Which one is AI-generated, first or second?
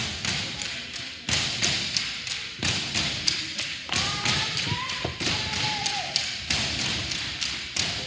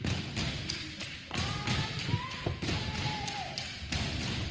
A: first